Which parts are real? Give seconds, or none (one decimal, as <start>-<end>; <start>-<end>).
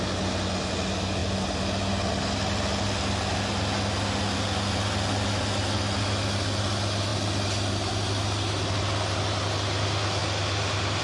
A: 0.0-11.0